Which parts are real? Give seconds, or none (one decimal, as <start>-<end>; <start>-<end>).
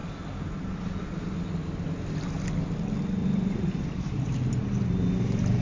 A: 0.0-3.2; 4.2-5.6